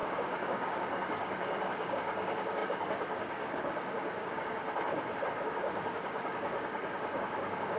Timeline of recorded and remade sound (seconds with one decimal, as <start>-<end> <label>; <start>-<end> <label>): 0.0-4.6 remade; 4.6-5.4 recorded; 5.4-7.8 remade